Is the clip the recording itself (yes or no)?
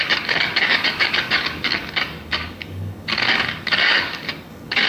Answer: no